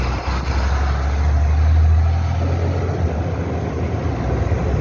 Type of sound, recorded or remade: recorded